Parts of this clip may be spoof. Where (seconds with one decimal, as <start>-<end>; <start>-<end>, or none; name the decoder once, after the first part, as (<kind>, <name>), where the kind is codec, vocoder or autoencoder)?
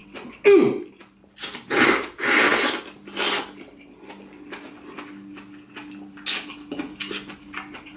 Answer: 1.4-2.5 (vocoder, BigVGAN v2); 7.3-8.0